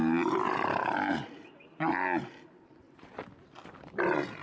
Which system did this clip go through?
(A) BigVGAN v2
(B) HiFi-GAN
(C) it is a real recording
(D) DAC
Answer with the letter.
A